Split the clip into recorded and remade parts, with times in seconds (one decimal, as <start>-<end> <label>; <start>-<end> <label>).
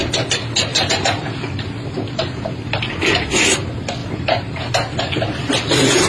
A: 0.0-0.7 recorded; 0.7-1.5 remade; 1.5-4.0 recorded; 4.0-4.7 remade; 4.7-6.1 recorded